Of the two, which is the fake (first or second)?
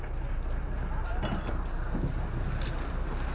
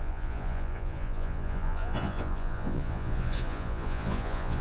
second